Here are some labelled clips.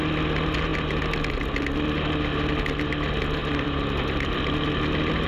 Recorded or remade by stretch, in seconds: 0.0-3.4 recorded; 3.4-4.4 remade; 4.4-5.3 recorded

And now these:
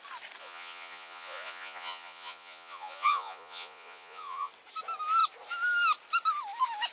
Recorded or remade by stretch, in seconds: 0.0-0.4 recorded; 0.4-4.5 remade; 4.5-6.9 recorded

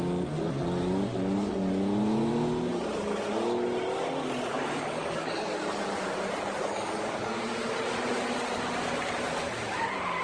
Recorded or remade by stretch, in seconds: 0.0-4.5 recorded; 4.5-5.5 remade; 5.5-6.6 recorded; 6.6-7.4 remade; 7.4-10.2 recorded

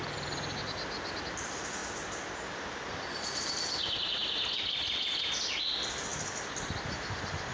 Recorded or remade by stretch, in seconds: 0.0-1.8 remade; 1.8-2.5 recorded; 2.5-6.1 remade; 6.1-7.5 recorded

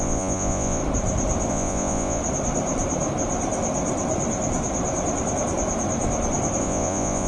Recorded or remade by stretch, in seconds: 0.0-0.8 remade; 0.8-1.5 recorded; 1.5-2.2 remade; 2.2-6.6 recorded; 6.6-7.3 remade

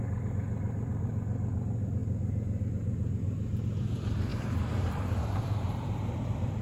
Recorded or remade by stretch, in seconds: 0.0-6.6 remade

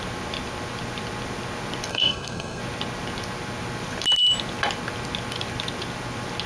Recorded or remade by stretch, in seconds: 0.0-1.9 recorded; 1.9-2.6 remade; 2.6-6.5 recorded

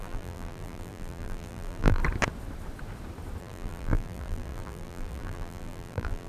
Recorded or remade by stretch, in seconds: 0.0-2.0 remade; 2.0-3.4 recorded; 3.4-6.3 remade